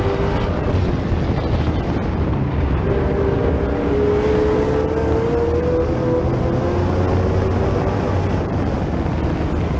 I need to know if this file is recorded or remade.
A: recorded